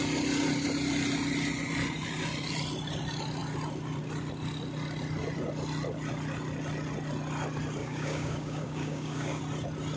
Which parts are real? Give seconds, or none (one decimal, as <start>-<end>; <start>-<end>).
0.0-7.8; 9.4-10.0